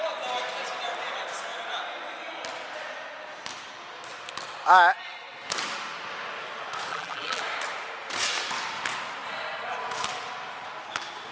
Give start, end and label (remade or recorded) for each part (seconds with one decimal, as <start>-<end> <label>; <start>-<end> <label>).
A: 0.0-6.9 recorded; 6.9-7.4 remade; 7.4-11.3 recorded